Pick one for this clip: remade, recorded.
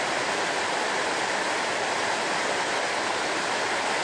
recorded